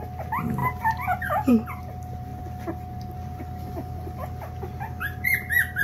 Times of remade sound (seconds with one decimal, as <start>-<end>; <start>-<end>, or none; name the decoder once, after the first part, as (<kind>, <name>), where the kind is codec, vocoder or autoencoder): none